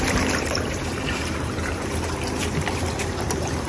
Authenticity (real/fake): fake